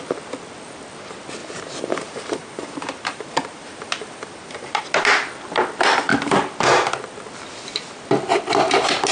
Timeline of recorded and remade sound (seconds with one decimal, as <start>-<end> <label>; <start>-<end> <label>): 0.0-1.4 recorded; 1.4-4.8 remade; 4.8-9.1 recorded